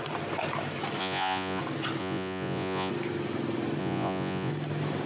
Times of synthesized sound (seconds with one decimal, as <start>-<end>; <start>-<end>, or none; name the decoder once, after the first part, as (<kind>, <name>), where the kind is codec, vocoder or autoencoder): 1.0-1.6 (vocoder, Vocos); 2.0-2.9; 3.8-4.5